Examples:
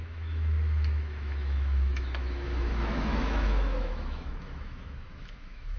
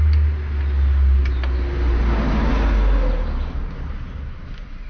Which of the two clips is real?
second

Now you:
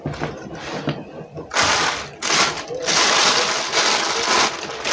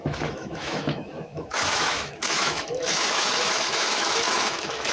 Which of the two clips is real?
first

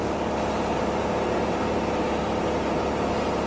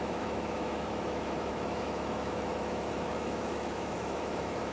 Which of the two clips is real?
first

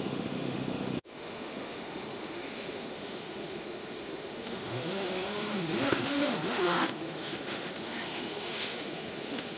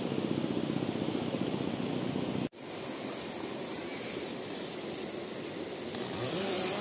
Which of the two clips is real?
second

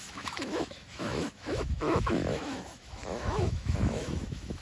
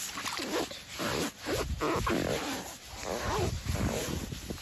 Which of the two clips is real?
second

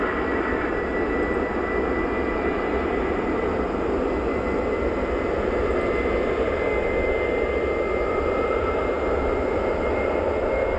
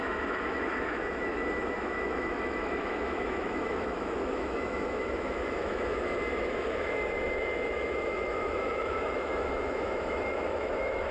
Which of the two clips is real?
first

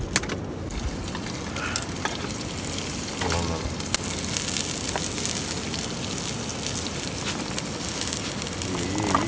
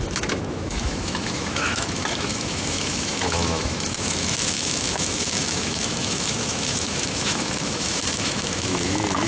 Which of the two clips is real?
first